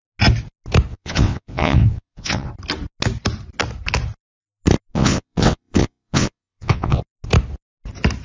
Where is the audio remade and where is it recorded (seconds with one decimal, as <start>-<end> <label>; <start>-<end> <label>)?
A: 0.0-0.9 recorded; 0.9-2.5 remade; 2.5-4.9 recorded; 4.9-7.0 remade; 7.0-8.2 recorded